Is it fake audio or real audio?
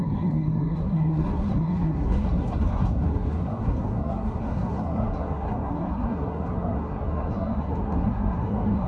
fake